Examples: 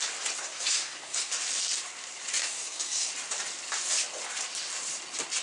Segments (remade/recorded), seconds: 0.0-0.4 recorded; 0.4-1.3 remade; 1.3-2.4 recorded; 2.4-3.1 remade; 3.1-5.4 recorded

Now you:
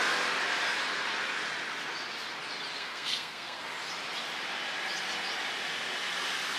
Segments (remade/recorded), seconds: 0.0-2.8 recorded; 2.8-3.6 remade; 3.6-6.6 recorded

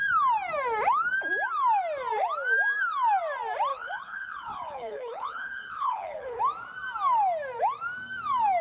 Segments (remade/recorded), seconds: 0.0-3.7 recorded; 3.7-6.4 remade; 6.4-8.6 recorded

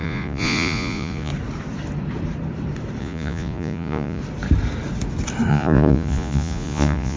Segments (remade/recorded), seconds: 0.0-1.3 remade; 1.3-3.0 recorded; 3.0-4.2 remade; 4.2-5.5 recorded; 5.5-7.2 remade

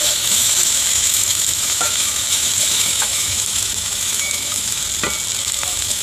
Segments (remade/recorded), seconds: 0.0-4.8 remade; 4.8-5.4 recorded; 5.4-6.0 remade

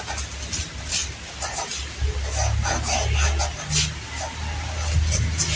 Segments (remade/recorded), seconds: 0.0-5.6 recorded